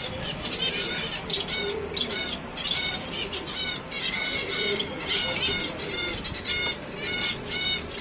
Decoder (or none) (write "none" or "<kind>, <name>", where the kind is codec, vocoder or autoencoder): vocoder, BigVGAN v2